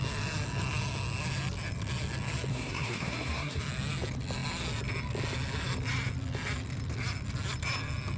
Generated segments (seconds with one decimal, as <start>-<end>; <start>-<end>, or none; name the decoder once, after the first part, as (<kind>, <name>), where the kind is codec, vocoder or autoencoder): 2.5-3.6 (codec, SNAC)